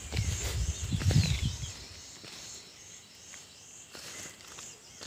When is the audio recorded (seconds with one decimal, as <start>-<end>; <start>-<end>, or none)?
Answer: 0.0-5.1

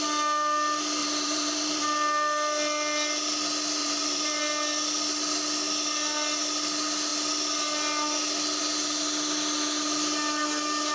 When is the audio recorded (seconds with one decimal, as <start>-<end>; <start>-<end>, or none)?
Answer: 0.0-1.0; 1.8-3.8; 4.4-10.9